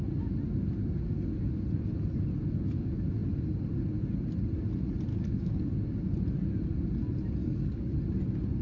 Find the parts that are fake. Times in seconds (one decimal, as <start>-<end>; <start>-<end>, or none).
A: 5.1-5.7; 7.4-7.9